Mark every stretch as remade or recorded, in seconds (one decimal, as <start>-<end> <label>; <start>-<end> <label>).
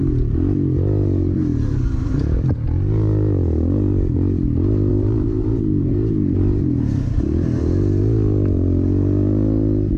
0.0-4.9 recorded; 4.9-7.2 remade; 7.2-10.0 recorded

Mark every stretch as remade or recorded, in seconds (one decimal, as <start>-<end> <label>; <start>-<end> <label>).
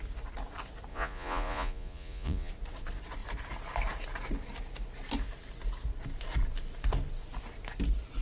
0.0-0.9 recorded; 0.9-2.5 remade; 2.5-8.2 recorded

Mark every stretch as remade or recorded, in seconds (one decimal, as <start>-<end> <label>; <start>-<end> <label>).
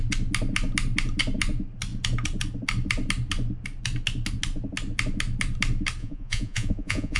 0.0-6.0 recorded; 6.0-7.2 remade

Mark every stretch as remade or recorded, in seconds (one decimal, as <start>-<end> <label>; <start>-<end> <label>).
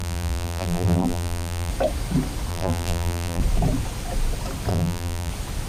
0.0-1.7 remade; 1.7-2.5 recorded; 2.5-3.4 remade; 3.4-4.7 recorded; 4.7-5.3 remade; 5.3-5.7 recorded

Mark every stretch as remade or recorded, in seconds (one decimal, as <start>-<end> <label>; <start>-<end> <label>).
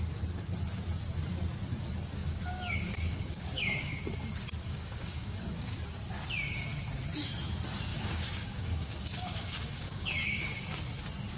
0.0-2.2 recorded; 2.2-4.0 remade; 4.0-4.6 recorded; 4.6-5.7 remade; 5.7-7.9 recorded; 7.9-10.8 remade; 10.8-11.4 recorded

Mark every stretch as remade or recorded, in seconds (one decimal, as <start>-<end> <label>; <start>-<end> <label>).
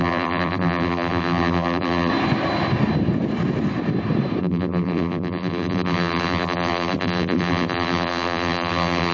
0.0-2.1 remade; 2.1-4.4 recorded; 4.4-9.1 remade